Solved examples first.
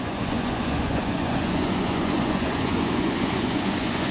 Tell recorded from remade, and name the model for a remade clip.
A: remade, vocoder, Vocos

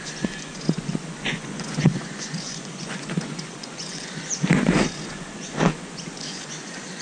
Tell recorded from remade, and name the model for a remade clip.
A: remade, vocoder, Vocos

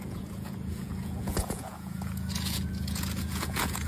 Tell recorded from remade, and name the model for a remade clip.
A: remade, vocoder, Vocos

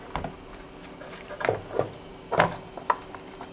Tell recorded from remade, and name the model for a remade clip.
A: recorded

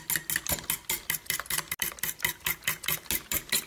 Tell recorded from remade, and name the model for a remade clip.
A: recorded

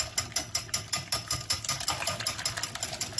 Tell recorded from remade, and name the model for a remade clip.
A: recorded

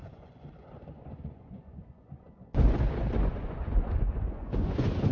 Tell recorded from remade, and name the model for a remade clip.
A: remade, vocoder, Vocos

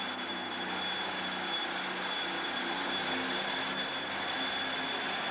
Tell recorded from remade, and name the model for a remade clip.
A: recorded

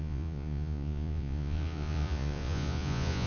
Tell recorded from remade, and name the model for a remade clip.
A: remade, vocoder, Vocos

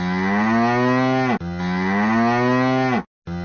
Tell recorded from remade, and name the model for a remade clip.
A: recorded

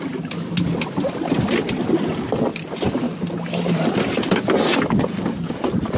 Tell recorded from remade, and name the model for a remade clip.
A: recorded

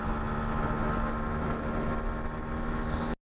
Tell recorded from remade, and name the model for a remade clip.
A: recorded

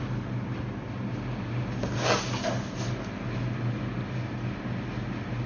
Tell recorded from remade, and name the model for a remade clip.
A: recorded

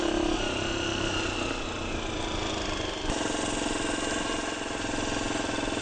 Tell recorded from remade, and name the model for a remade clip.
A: recorded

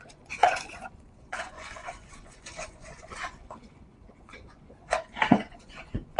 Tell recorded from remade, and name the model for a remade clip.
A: remade, vocoder, Vocos